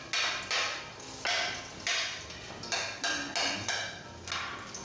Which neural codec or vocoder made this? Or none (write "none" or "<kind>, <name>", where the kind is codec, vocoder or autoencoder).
none